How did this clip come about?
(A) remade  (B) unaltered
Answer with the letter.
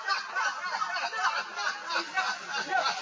B